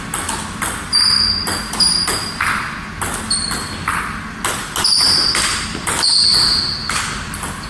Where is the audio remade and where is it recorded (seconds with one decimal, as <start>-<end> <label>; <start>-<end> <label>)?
0.0-6.3 recorded; 6.3-7.0 remade; 7.0-7.7 recorded